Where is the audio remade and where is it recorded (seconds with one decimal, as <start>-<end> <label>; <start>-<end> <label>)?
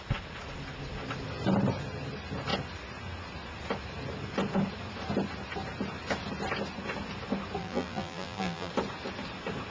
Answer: 0.0-7.6 recorded; 7.6-8.7 remade; 8.7-9.7 recorded